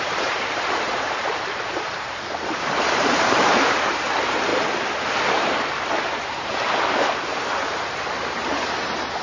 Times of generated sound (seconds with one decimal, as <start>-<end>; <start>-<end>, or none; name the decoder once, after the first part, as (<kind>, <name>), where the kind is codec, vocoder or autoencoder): 0.0-4.5 (vocoder, BigVGAN v2); 5.1-9.2